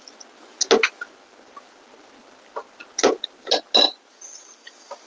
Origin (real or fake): real